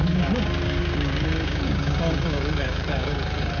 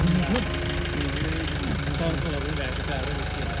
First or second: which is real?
second